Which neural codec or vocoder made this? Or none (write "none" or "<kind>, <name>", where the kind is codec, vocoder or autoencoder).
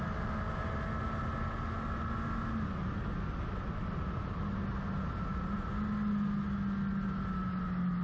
none